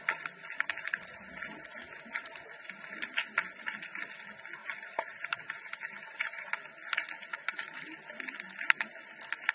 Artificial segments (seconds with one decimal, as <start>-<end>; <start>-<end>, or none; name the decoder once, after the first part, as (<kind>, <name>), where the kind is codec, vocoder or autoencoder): 1.8-2.7 (vocoder, BigVGAN v2); 4.6-6.5; 7.3-8.0